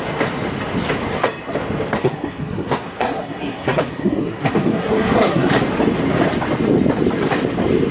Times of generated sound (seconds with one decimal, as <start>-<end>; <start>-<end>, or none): 1.9-5.5